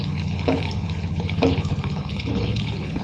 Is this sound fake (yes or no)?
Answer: yes